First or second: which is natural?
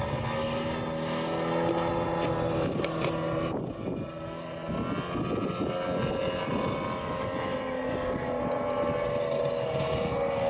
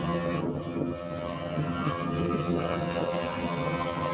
first